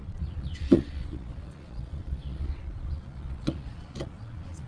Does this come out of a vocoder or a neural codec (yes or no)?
yes